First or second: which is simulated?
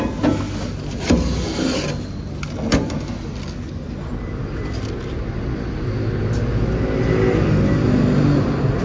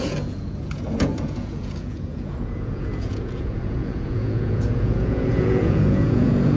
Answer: second